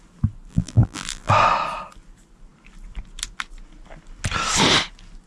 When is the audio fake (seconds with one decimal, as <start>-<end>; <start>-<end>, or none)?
0.5-1.3